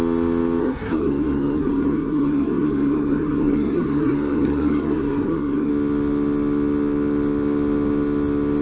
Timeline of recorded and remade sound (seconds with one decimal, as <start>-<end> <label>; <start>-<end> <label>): 0.0-0.6 recorded; 0.6-5.7 remade; 5.7-8.6 recorded